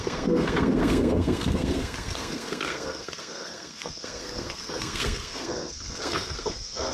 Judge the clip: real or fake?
fake